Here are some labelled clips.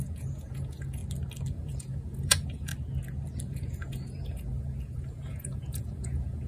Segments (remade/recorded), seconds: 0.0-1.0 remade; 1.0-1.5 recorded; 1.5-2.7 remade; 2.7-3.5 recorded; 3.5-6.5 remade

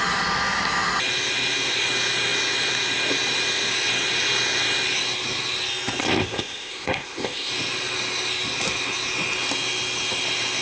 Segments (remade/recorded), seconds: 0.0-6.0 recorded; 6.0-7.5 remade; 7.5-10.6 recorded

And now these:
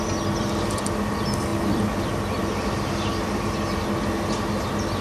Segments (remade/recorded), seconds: 0.0-5.0 recorded

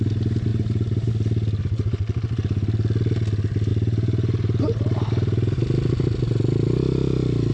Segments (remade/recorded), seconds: 0.0-0.5 recorded; 0.5-1.1 remade; 1.1-3.7 recorded; 3.7-5.6 remade; 5.6-7.5 recorded